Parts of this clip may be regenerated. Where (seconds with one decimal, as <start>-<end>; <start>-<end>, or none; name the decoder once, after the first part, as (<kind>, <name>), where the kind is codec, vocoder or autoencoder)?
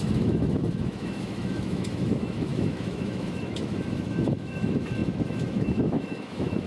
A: 0.0-6.7 (autoencoder, DAC-VAE)